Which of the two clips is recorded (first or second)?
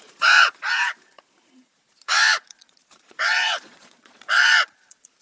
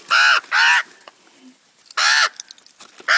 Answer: second